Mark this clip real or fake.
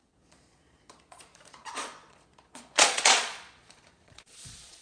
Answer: fake